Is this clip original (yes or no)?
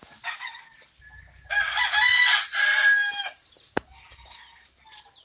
yes